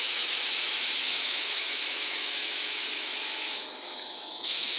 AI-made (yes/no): yes